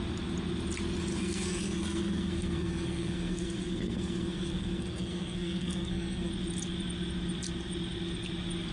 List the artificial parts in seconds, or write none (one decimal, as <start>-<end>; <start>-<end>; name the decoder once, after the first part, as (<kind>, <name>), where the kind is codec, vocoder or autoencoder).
1.1-6.3 (codec, SNAC)